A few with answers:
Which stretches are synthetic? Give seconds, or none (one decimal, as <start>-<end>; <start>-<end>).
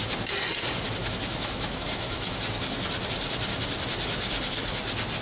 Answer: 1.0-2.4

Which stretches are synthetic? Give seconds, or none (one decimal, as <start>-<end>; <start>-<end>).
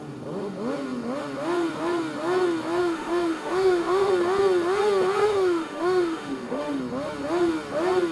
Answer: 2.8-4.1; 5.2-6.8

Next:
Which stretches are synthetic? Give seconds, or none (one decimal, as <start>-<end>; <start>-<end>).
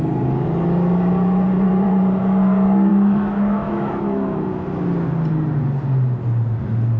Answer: 2.9-4.8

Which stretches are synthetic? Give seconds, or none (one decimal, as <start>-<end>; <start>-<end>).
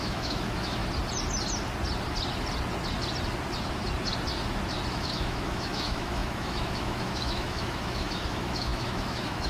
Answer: 0.0-0.8; 4.9-9.5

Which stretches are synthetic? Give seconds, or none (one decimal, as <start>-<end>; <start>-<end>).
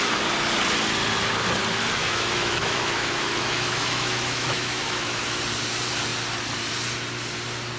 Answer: 2.0-5.4